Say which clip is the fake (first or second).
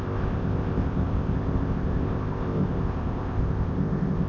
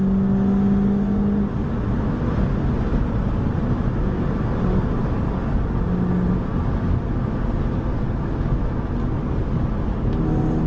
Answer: first